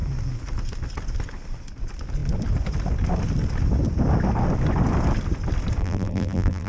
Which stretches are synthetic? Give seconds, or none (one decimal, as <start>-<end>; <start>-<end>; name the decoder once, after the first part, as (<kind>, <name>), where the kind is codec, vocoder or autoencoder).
5.8-6.7 (vocoder, BigVGAN v2)